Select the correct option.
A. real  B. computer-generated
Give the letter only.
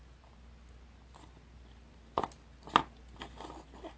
A